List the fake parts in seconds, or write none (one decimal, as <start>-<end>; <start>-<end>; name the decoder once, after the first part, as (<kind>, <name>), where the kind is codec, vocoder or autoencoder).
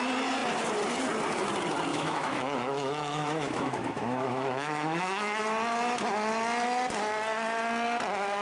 1.9-5.4 (autoencoder, DAC-VAE)